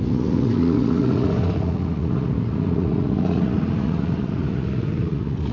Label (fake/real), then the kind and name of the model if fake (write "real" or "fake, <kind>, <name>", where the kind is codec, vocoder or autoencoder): fake, vocoder, Vocos